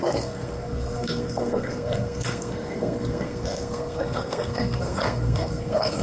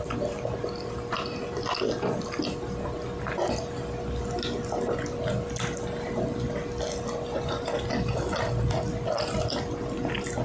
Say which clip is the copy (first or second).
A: first